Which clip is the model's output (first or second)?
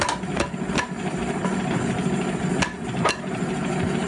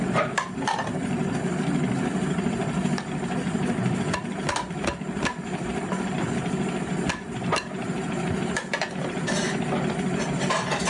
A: second